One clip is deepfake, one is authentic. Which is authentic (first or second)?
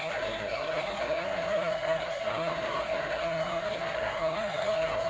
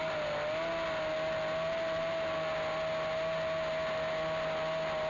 second